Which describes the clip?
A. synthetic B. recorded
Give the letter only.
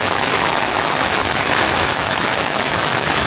A